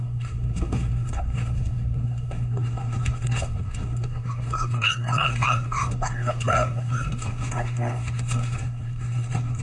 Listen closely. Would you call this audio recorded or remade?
remade